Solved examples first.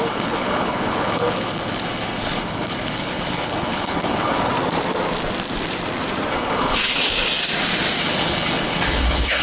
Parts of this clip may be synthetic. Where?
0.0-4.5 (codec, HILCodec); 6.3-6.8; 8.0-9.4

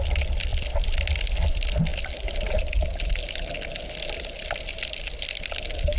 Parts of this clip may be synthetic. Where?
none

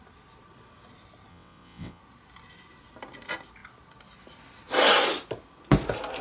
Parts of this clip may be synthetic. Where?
1.3-2.0 (vocoder, WaveNeXt)

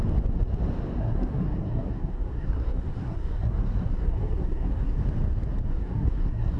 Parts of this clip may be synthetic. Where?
1.0-5.0 (codec, SNAC); 5.7-6.6

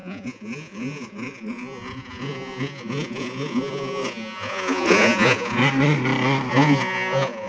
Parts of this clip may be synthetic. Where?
0.0-5.6 (vocoder, Vocos); 6.5-7.5

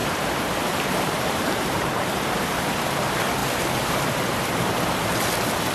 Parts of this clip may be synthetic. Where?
0.0-3.0 (vocoder, BigVGAN v2)

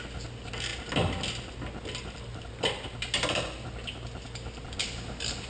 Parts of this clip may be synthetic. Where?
none

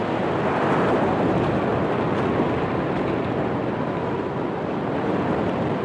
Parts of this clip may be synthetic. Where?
none